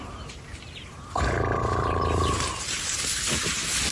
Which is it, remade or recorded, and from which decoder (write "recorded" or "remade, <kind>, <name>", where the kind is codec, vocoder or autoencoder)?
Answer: remade, vocoder, BigVGAN v2